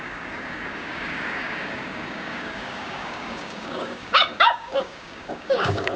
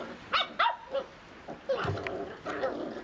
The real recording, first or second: second